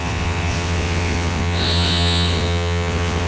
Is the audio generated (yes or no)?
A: yes